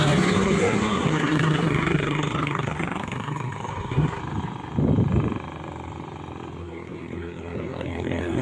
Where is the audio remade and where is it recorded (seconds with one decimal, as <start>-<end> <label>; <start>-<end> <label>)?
0.0-4.2 remade; 4.2-6.6 recorded; 6.6-8.4 remade